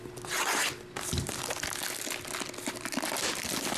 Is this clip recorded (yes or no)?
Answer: yes